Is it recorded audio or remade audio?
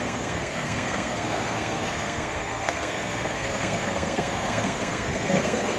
remade